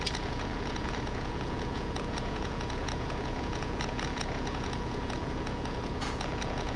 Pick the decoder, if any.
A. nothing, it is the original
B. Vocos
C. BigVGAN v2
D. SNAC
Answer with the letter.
B